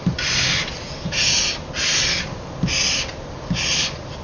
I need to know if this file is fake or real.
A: real